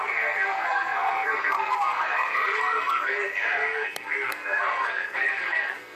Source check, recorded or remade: remade